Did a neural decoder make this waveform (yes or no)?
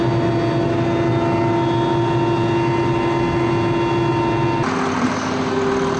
no